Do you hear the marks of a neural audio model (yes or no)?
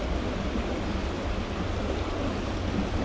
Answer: no